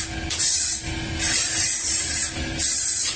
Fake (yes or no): no